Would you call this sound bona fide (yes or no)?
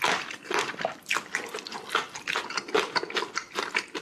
yes